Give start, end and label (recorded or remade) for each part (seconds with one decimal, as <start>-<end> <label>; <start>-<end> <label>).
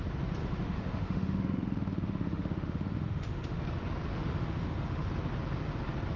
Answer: 0.0-0.4 recorded; 0.4-3.6 remade; 3.6-4.1 recorded; 4.1-5.1 remade; 5.1-6.2 recorded